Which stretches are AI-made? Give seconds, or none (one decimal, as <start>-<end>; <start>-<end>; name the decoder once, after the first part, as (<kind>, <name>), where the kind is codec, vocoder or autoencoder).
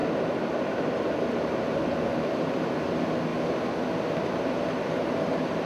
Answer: 1.1-3.3 (vocoder, BigVGAN v2); 4.1-5.7